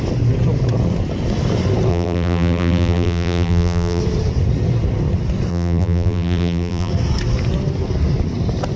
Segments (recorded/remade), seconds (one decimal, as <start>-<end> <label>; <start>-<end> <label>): 0.0-1.9 recorded; 1.9-4.0 remade; 4.0-5.5 recorded; 5.5-6.9 remade; 6.9-8.8 recorded